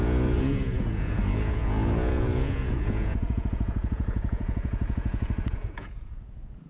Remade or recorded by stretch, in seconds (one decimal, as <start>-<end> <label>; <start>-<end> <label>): 0.0-6.7 remade